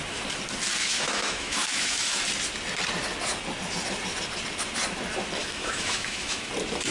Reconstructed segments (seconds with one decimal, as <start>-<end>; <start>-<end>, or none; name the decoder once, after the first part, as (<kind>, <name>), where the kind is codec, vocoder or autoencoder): 0.8-2.2 (autoencoder, DAC-VAE); 5.4-6.5